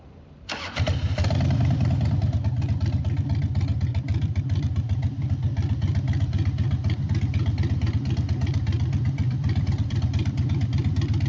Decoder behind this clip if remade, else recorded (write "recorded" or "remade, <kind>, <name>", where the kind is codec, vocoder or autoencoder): remade, vocoder, BigVGAN v2